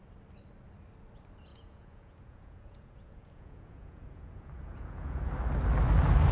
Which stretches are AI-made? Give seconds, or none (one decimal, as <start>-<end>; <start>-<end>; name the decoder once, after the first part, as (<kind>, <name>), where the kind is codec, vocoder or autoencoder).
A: 1.5-5.3 (vocoder, Vocos)